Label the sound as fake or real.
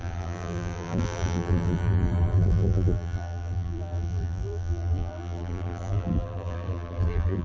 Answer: fake